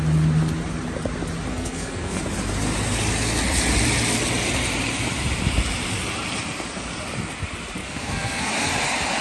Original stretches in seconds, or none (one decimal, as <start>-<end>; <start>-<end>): 0.0-1.5; 2.2-7.8; 8.5-9.2